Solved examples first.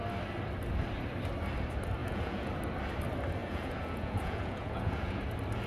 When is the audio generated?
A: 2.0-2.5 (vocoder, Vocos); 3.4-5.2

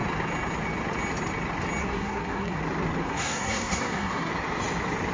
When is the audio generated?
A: 1.8-2.6 (codec, SNAC); 3.0-4.3

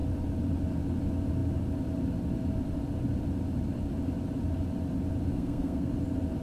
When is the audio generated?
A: 5.3-5.9 (codec, SNAC)

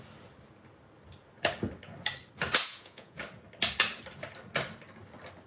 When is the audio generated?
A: 2.6-3.2 (vocoder, Vocos)

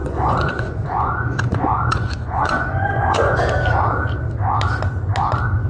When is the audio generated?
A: 0.0-3.4 (vocoder, Vocos)

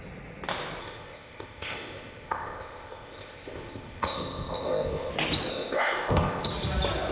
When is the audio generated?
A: 0.8-5.1 (codec, ZipCodec); 5.5-6.5